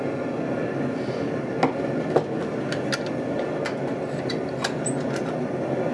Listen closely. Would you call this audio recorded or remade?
recorded